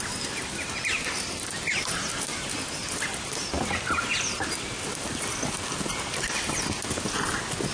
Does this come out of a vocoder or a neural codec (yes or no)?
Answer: no